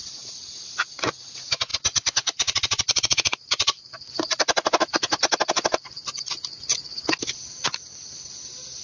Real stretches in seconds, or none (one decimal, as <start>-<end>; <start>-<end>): 1.0-1.7; 6.1-8.8